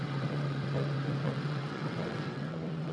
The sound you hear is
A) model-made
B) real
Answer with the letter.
A